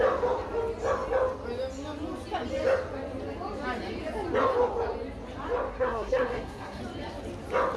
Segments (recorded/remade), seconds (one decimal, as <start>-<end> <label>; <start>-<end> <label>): 0.0-5.7 recorded; 5.7-6.8 remade; 6.8-7.8 recorded